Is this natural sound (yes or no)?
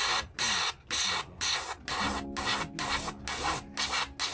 yes